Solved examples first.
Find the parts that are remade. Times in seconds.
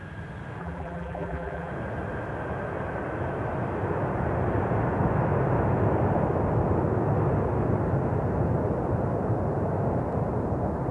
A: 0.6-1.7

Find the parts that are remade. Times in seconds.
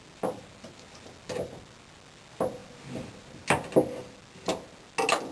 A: none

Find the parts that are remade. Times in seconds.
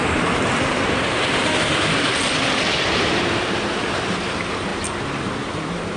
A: 0.0-2.1; 3.2-4.7; 5.2-6.0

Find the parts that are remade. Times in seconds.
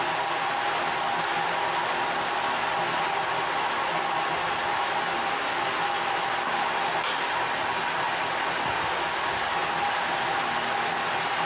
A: none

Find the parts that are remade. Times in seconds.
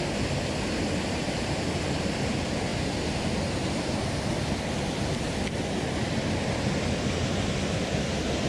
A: none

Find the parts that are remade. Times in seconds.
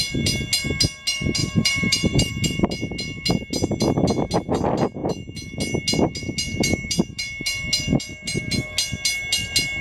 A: 1.4-2.3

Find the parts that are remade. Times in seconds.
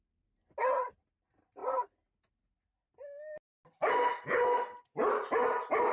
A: none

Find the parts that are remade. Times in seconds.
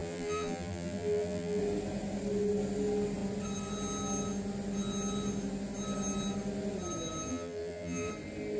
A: 0.0-1.6; 7.3-8.1